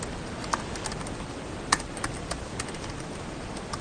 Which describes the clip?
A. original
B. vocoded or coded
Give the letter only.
A